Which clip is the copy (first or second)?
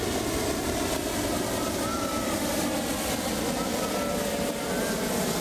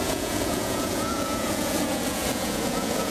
second